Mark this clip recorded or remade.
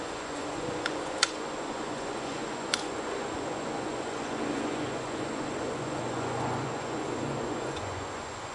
remade